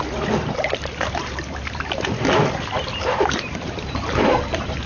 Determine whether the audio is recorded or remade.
remade